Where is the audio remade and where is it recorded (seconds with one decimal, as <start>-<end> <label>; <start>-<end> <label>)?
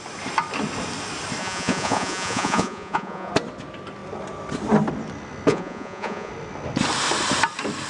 0.0-1.4 recorded; 1.4-3.3 remade; 3.3-5.5 recorded; 5.5-6.3 remade; 6.3-7.9 recorded